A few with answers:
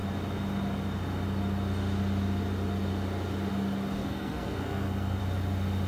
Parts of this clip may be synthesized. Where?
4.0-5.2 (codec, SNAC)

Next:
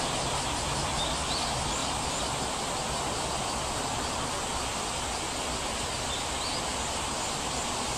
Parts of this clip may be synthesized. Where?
none

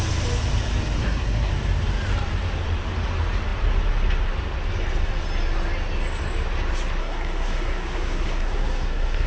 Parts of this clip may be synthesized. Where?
1.0-1.5 (codec, SNAC); 7.0-9.3

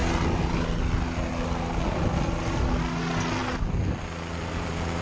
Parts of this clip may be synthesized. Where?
none

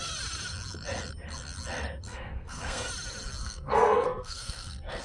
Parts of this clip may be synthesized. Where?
2.1-2.9 (codec, SNAC); 3.4-5.0

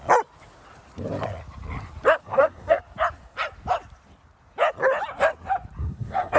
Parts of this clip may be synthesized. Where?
2.2-2.8 (codec, SNAC); 5.8-6.4